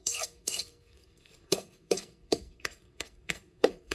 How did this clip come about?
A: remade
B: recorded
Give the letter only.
A